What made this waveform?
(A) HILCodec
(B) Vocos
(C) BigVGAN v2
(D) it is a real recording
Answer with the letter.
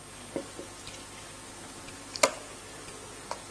D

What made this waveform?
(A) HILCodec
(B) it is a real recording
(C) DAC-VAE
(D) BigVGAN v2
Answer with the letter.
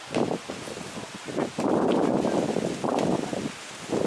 B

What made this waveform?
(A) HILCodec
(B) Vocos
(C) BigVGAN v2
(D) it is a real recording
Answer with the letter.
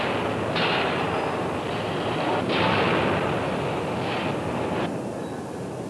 D